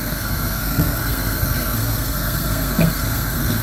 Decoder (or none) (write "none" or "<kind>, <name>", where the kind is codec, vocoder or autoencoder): codec, SNAC